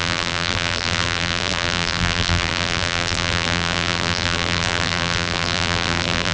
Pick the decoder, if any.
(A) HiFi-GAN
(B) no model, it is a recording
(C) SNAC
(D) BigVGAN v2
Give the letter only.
D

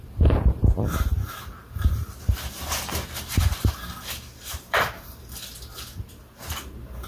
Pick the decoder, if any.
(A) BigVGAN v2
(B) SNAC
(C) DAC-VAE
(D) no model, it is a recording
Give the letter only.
A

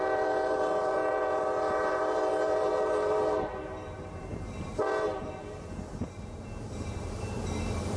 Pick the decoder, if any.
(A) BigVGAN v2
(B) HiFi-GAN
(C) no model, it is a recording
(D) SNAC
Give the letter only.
A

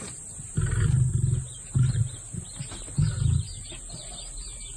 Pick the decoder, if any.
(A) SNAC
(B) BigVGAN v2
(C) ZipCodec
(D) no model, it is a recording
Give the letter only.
D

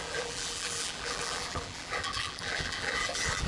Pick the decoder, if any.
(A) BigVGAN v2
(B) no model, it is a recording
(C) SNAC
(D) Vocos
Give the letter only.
A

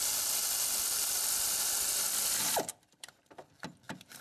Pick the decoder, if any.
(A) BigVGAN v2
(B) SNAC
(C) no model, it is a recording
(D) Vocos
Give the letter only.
A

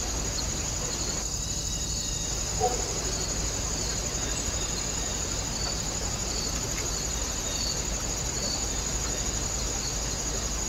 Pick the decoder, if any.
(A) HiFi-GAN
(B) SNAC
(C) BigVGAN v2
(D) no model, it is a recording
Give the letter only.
D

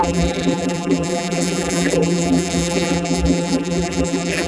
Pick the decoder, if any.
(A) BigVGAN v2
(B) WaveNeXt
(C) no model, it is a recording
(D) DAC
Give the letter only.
A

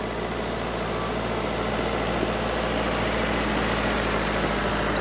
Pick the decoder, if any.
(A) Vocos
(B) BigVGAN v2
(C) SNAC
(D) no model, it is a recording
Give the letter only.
D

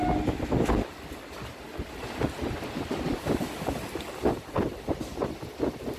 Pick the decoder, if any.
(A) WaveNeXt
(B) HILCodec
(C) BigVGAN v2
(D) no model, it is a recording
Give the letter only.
D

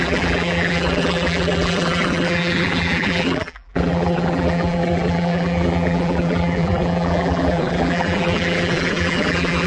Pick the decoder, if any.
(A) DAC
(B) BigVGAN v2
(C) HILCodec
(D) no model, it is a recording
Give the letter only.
B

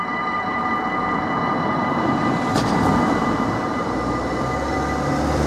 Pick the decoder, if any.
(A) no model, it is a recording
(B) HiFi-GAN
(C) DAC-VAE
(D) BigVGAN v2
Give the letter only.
D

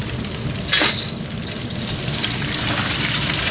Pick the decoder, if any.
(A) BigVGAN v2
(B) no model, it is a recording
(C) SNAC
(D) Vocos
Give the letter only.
A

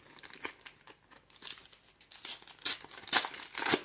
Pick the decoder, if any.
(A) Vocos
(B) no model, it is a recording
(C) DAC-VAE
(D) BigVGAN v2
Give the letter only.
B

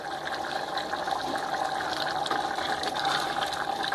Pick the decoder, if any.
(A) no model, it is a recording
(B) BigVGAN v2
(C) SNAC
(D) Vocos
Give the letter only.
B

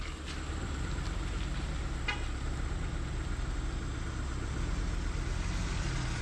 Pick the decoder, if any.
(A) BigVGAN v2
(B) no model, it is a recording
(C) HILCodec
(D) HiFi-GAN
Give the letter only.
B